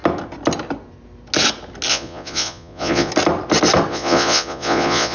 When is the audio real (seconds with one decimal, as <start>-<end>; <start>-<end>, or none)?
0.0-1.9; 3.1-3.9